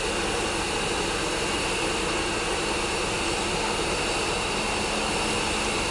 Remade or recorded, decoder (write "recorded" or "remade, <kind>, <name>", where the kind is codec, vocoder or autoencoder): recorded